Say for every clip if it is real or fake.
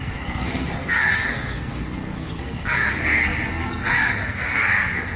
fake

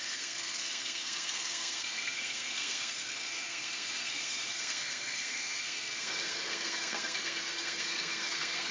fake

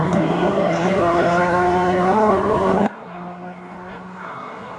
fake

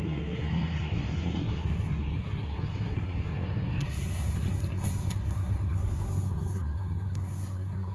fake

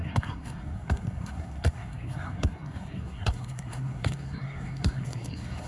fake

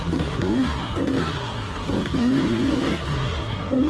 fake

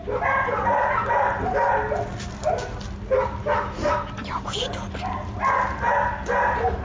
real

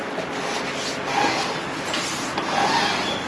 real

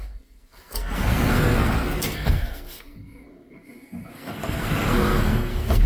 fake